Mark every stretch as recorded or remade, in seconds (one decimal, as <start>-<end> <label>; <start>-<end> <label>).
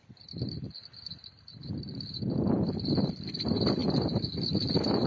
0.0-5.1 recorded